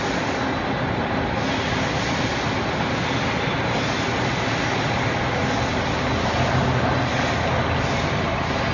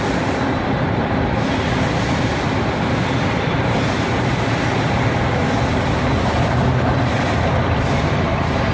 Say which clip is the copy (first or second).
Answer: second